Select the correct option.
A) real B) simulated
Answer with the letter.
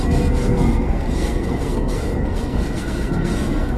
B